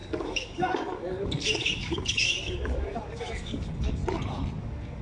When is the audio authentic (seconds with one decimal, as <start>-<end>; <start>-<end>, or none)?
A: 4.0-4.6